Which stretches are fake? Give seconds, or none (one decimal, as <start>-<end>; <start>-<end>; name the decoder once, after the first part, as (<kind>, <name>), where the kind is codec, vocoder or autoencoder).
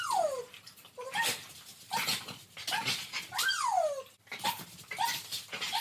none